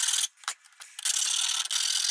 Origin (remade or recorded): recorded